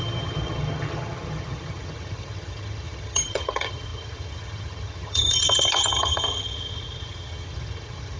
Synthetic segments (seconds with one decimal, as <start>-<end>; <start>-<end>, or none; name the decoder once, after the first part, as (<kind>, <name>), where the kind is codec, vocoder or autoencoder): 0.0-8.2 (vocoder, HiFi-GAN)